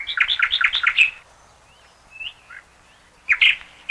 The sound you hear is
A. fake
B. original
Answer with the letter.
B